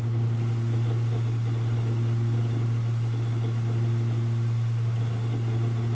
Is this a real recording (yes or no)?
yes